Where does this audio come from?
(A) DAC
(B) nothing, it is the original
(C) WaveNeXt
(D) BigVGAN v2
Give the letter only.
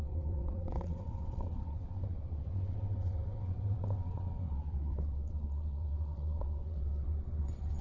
C